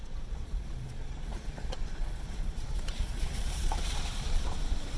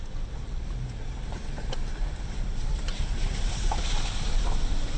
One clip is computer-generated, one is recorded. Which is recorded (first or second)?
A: second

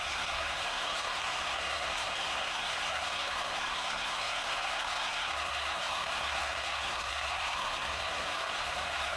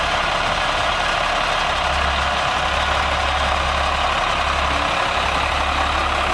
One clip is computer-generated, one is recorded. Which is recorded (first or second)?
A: second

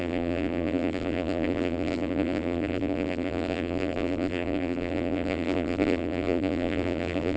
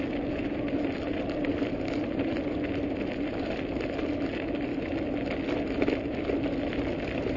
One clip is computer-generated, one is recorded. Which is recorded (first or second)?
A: second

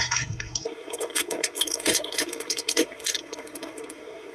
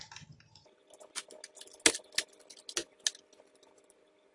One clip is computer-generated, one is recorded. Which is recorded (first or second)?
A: second